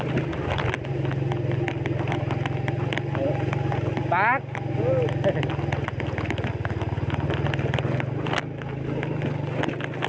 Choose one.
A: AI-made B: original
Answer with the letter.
B